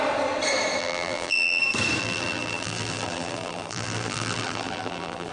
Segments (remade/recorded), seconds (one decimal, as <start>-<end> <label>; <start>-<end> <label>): 0.0-0.8 recorded; 0.8-1.6 remade; 1.6-2.0 recorded; 2.0-5.3 remade